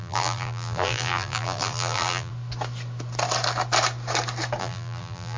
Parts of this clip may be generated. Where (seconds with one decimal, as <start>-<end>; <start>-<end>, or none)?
0.0-2.3; 4.6-5.4

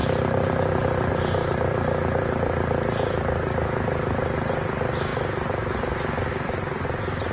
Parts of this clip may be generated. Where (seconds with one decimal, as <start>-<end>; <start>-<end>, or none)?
1.1-7.3